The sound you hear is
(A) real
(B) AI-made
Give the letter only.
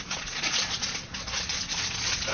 B